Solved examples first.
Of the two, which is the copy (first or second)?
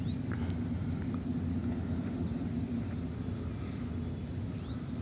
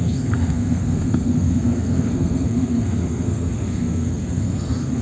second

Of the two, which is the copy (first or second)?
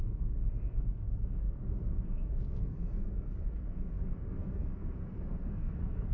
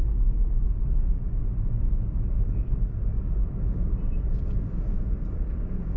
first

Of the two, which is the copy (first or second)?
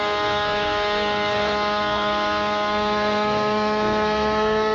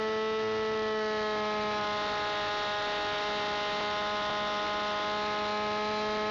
first